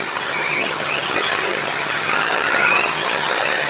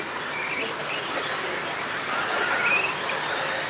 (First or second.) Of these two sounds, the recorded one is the second